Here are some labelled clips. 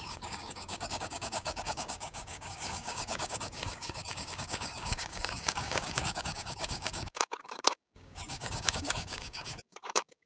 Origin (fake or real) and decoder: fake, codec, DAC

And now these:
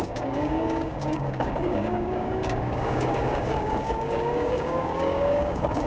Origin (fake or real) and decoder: fake, codec, DAC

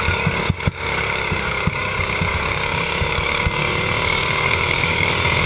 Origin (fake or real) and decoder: fake, codec, DAC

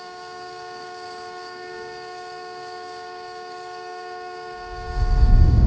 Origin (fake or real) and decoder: fake, codec, DAC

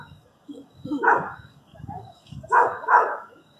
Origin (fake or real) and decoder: fake, codec, DAC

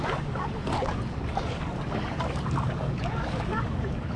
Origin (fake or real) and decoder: fake, codec, DAC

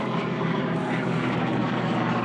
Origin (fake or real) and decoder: fake, codec, DAC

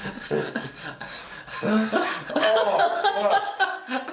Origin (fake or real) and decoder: fake, codec, DAC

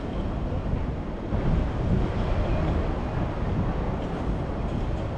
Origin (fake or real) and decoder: real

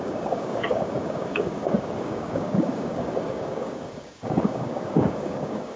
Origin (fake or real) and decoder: fake, codec, DAC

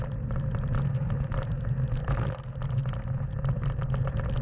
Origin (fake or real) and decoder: real